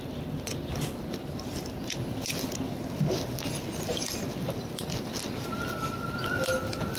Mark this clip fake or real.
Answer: real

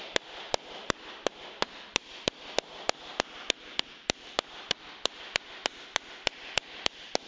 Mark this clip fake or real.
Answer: real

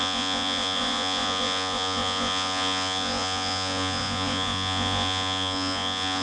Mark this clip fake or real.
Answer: fake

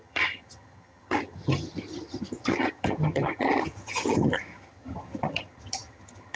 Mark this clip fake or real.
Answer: fake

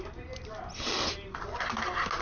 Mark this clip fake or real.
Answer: real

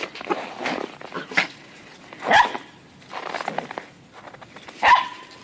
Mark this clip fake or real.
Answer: fake